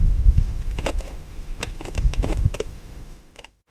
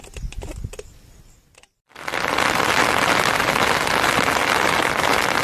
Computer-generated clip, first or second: first